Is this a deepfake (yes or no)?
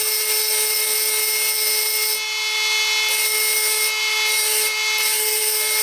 yes